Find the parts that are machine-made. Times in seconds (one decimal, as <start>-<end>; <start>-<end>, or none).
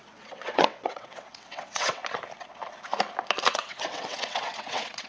0.0-2.0; 3.5-5.1